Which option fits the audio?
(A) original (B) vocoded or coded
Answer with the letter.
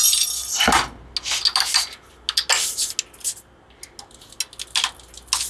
A